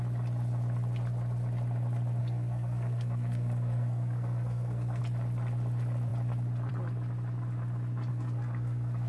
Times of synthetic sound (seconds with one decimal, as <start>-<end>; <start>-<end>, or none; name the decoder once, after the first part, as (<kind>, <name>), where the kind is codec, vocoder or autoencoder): 2.2-5.0 (codec, SNAC); 8.1-9.1